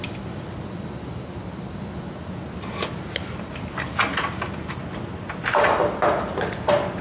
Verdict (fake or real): real